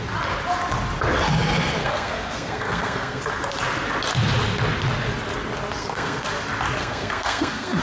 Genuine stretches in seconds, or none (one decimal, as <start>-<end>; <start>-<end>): 0.0-1.8; 3.2-5.8; 6.3-6.8